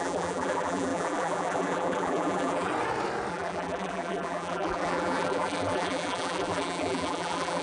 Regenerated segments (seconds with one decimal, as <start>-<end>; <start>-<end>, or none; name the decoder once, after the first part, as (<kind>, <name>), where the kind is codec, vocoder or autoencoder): 0.0-2.7 (vocoder, BigVGAN v2); 3.3-7.6